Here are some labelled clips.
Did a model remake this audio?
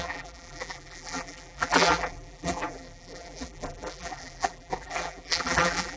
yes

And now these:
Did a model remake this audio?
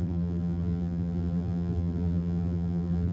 yes